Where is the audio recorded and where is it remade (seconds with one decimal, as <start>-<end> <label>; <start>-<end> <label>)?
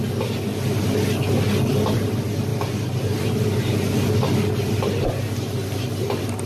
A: 0.0-6.5 recorded